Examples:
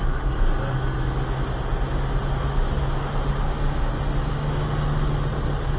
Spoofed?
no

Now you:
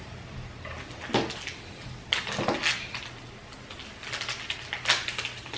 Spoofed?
no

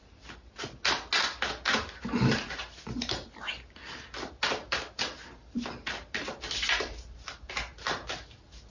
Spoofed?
no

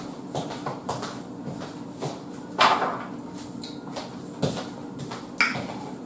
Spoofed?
no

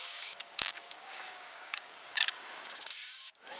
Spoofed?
yes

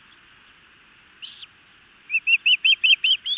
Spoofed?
no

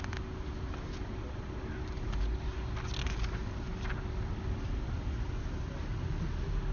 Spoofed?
no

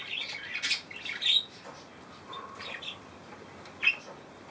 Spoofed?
no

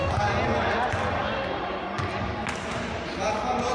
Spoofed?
no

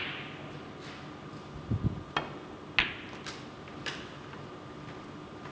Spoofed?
no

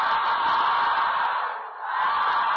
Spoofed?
no